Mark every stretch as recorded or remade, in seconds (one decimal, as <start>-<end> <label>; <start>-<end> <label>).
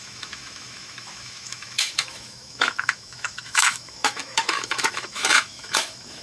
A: 0.0-6.2 remade